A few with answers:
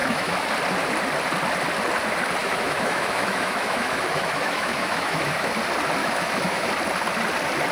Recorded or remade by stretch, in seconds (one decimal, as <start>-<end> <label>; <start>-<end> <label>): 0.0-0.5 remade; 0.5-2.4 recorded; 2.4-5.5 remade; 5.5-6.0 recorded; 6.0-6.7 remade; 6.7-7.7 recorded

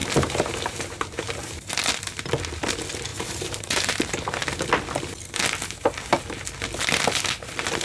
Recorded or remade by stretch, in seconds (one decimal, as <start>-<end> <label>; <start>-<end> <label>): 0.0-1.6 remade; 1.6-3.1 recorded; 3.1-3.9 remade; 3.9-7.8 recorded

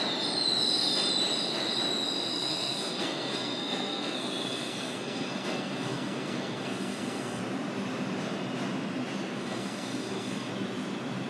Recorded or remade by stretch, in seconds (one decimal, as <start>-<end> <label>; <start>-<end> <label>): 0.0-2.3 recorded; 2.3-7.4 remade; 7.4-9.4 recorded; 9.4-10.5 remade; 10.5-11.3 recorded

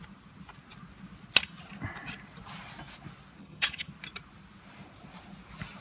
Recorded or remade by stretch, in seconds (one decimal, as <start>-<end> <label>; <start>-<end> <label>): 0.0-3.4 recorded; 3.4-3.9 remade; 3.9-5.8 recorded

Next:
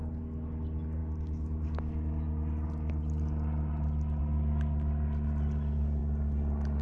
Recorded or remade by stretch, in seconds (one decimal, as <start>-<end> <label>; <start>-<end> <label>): 0.0-6.8 recorded

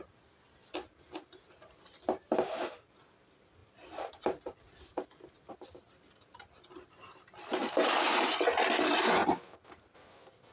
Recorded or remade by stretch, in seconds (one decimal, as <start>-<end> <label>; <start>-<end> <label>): 0.0-10.5 recorded

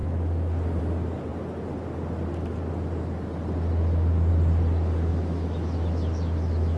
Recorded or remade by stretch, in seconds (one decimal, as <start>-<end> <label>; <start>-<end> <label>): 0.0-5.1 recorded; 5.1-6.8 remade

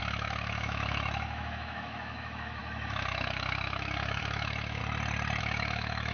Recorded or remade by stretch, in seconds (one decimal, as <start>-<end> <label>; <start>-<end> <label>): 0.0-4.8 remade; 4.8-5.4 recorded; 5.4-6.1 remade